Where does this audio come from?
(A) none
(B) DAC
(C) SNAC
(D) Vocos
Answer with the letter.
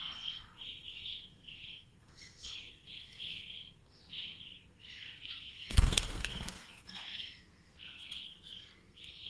C